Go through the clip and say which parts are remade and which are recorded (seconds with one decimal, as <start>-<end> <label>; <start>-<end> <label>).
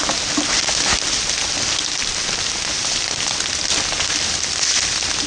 0.0-5.3 recorded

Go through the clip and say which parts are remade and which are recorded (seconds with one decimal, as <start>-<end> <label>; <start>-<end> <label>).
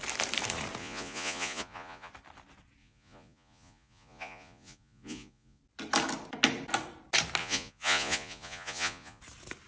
0.0-0.8 recorded; 0.8-2.1 remade; 2.1-2.8 recorded; 2.8-5.6 remade; 5.6-7.4 recorded; 7.4-9.2 remade; 9.2-9.7 recorded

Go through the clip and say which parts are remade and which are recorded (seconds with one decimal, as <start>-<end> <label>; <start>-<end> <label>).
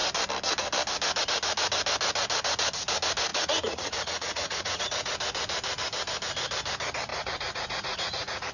0.0-3.3 recorded; 3.3-4.8 remade; 4.8-7.1 recorded; 7.1-8.5 remade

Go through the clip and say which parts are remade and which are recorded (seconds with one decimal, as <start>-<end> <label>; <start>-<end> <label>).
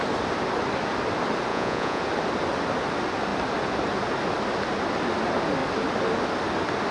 0.0-1.5 recorded; 1.5-2.0 remade; 2.0-6.9 recorded